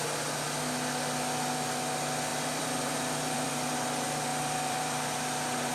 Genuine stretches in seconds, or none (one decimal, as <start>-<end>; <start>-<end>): 0.0-2.3; 3.5-4.3